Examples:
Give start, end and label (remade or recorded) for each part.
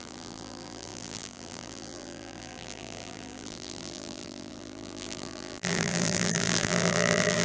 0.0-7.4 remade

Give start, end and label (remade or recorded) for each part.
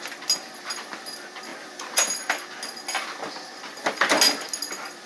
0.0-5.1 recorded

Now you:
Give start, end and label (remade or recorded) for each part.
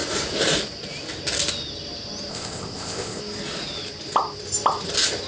0.0-2.3 recorded; 2.3-3.2 remade; 3.2-5.3 recorded